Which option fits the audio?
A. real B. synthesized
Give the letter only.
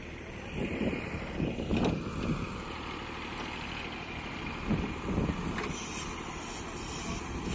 A